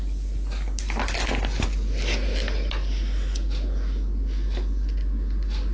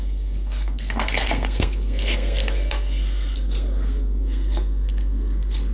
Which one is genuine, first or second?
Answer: first